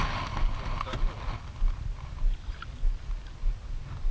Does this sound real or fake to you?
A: real